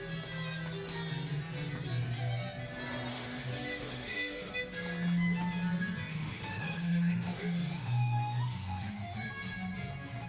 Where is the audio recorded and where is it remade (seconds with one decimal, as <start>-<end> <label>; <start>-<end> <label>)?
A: 0.0-3.1 recorded; 3.1-4.5 remade; 4.5-6.1 recorded; 6.1-9.3 remade; 9.3-10.3 recorded